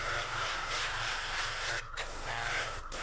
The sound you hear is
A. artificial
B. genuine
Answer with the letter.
A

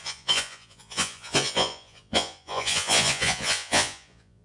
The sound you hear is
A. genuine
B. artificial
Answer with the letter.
B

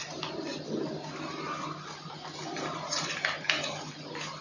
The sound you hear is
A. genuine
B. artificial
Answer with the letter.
A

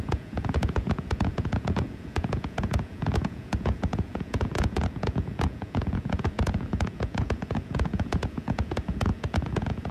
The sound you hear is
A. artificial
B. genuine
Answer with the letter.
A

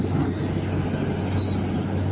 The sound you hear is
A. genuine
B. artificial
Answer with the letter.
A